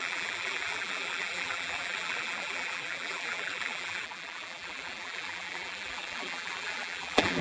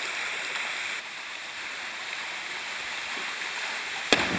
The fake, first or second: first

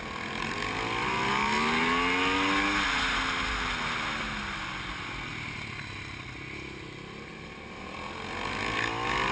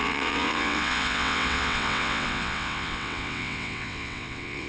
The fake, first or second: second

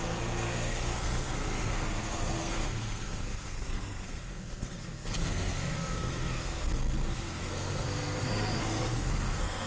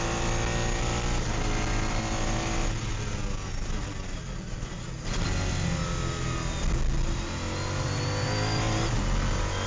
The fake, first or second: first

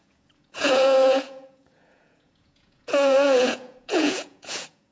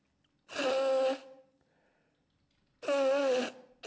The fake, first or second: first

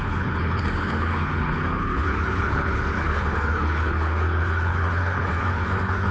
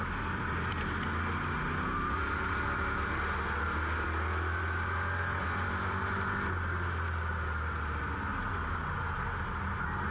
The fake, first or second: first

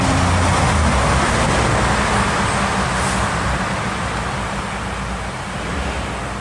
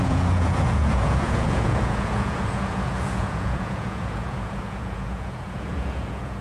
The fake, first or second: second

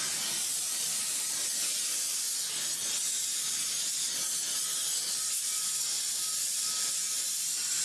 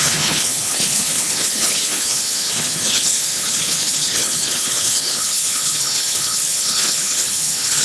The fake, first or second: second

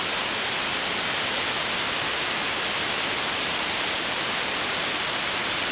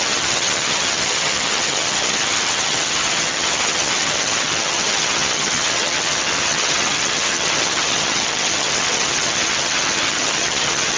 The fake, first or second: second